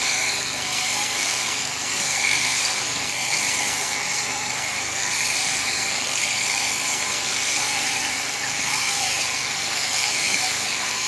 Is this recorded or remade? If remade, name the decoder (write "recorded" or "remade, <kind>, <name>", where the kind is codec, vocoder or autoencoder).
remade, codec, SNAC